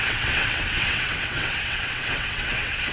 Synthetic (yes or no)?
yes